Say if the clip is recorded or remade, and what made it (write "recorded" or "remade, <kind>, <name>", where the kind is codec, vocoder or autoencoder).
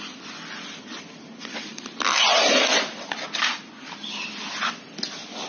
recorded